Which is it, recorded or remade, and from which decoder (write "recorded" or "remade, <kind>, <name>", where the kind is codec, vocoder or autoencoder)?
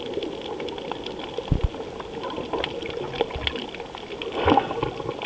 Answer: recorded